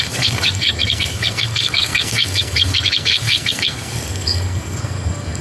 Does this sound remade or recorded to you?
remade